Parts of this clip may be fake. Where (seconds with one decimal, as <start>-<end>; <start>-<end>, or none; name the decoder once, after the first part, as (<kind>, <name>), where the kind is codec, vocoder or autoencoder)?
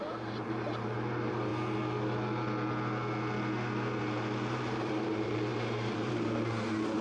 0.0-1.5 (vocoder, BigVGAN v2); 4.0-7.0